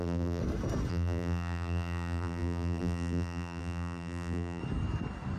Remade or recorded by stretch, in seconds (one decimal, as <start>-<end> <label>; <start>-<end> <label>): 0.0-0.4 remade; 0.4-0.9 recorded; 0.9-4.6 remade; 4.6-5.4 recorded